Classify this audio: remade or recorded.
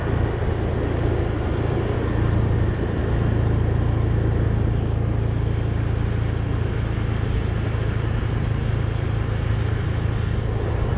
recorded